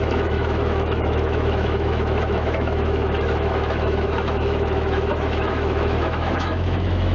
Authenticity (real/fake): fake